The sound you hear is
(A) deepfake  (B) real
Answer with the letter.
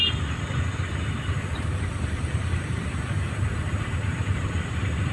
B